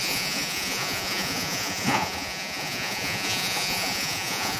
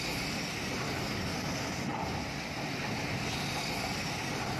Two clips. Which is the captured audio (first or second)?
second